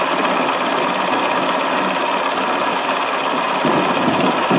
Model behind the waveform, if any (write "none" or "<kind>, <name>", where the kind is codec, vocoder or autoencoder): none